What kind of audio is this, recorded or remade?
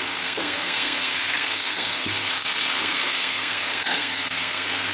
remade